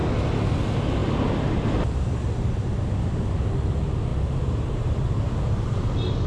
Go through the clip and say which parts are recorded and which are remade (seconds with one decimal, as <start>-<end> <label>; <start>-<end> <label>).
0.0-6.3 recorded

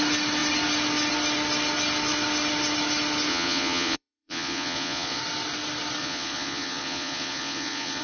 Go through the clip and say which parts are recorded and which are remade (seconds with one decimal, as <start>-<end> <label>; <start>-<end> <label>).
0.0-3.3 recorded; 3.3-5.2 remade; 5.2-6.0 recorded; 6.0-8.0 remade

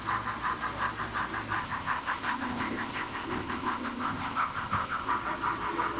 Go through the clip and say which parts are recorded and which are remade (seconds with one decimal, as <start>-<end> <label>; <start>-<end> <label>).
0.0-1.6 recorded; 1.6-5.1 remade; 5.1-6.0 recorded